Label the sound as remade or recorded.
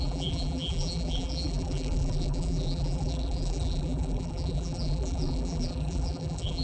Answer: remade